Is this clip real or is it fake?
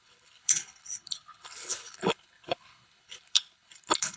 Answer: fake